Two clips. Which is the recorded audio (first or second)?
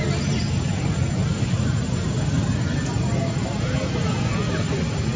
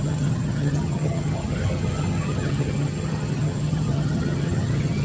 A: first